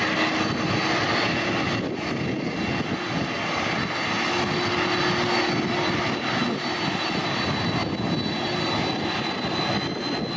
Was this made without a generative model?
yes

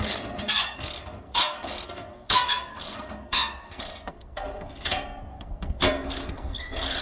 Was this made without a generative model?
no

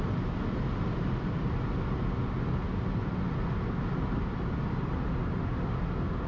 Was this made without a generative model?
yes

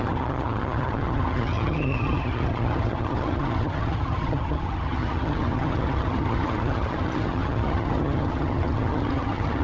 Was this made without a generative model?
no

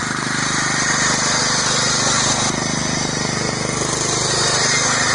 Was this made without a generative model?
yes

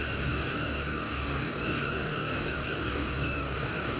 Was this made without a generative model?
no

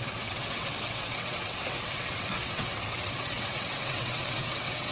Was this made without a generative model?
no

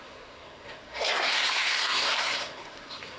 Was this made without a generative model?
no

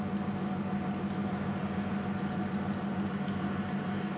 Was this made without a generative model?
yes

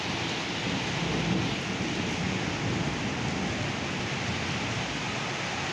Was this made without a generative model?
yes